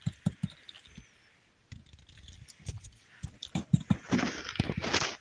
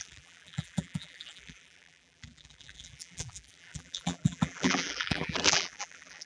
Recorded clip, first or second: first